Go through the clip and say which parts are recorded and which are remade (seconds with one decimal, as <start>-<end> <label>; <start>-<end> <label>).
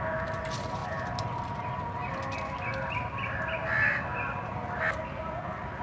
0.0-5.8 recorded